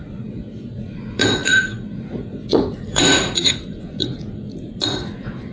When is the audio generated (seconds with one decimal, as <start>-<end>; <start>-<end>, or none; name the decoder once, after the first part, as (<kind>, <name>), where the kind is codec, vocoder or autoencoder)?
0.0-5.5 (vocoder, Vocos)

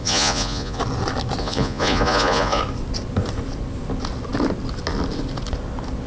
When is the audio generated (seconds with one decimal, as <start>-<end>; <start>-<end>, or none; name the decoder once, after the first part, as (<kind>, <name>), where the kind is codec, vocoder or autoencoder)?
0.0-0.8 (vocoder, Vocos); 1.4-2.6